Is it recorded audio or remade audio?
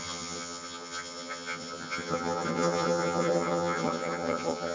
remade